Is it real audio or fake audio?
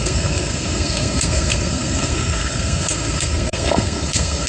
fake